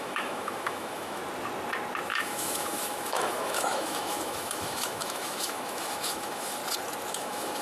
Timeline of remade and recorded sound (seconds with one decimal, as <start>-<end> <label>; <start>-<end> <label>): 0.0-1.2 remade; 1.2-2.1 recorded; 2.1-6.6 remade; 6.6-7.1 recorded; 7.1-7.6 remade